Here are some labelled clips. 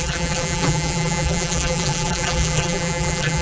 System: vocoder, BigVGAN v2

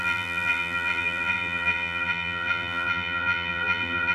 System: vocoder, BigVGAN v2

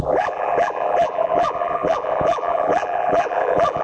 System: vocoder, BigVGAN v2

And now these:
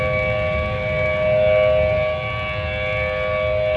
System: none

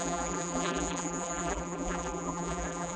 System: vocoder, BigVGAN v2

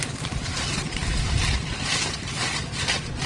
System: vocoder, BigVGAN v2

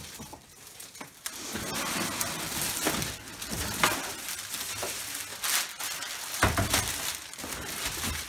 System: none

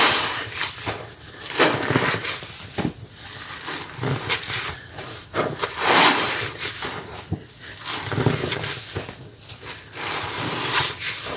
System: none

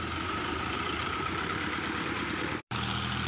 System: vocoder, BigVGAN v2